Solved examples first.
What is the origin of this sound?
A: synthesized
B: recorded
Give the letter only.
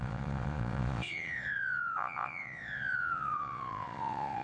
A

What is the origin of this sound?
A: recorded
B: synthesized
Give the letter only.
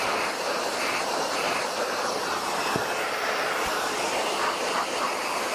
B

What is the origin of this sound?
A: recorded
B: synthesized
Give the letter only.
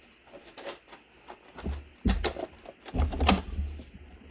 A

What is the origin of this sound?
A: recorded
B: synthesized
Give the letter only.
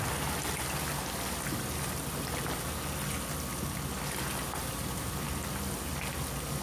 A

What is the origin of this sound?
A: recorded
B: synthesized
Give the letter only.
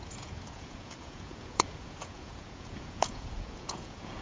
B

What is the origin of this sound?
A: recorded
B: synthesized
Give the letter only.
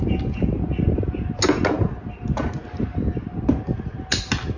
A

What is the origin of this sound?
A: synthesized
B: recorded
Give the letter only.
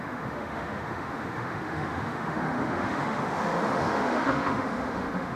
A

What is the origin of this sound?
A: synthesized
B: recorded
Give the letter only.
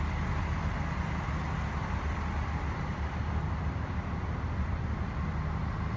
B